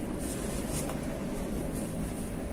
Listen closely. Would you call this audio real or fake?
real